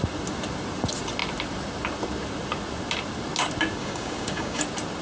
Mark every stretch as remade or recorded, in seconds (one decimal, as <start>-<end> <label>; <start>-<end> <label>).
0.0-3.8 recorded; 3.8-4.6 remade; 4.6-5.0 recorded